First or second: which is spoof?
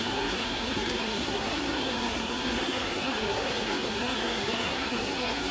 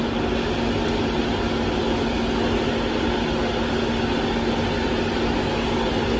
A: first